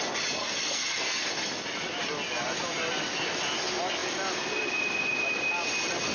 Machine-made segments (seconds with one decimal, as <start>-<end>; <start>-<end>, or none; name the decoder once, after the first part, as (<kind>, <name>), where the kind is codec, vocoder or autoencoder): 0.4-1.3 (codec, SNAC)